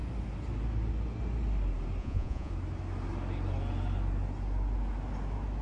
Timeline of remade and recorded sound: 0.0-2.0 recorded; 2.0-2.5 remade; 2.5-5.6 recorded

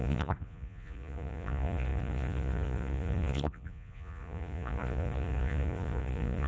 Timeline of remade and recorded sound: 0.0-6.5 remade